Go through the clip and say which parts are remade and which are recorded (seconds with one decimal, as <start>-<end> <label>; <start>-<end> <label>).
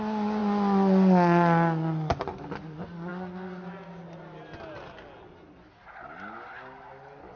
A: 0.0-7.4 recorded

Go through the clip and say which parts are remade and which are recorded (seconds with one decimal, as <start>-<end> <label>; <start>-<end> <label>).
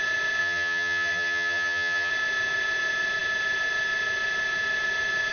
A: 0.0-0.4 recorded; 0.4-2.1 remade; 2.1-5.3 recorded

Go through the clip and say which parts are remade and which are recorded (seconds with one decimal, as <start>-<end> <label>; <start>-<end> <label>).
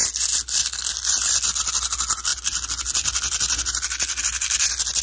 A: 0.0-5.0 recorded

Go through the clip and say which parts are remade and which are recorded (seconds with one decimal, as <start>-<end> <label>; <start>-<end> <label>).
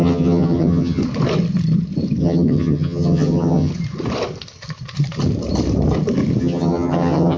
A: 0.0-1.0 remade; 1.0-2.2 recorded; 2.2-3.7 remade; 3.7-6.4 recorded; 6.4-7.4 remade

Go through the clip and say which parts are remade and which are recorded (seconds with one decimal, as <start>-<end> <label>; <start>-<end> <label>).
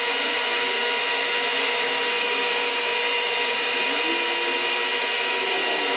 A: 0.0-6.0 recorded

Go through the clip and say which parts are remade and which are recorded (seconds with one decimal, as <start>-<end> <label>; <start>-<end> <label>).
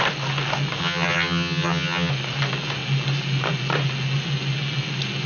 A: 0.0-0.8 recorded; 0.8-2.1 remade; 2.1-5.3 recorded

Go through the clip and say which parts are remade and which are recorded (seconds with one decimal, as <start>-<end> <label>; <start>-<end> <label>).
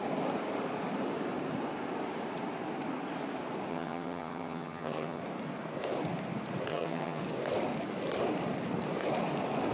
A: 0.0-3.7 recorded; 3.7-5.2 remade; 5.2-6.7 recorded; 6.7-7.2 remade; 7.2-9.7 recorded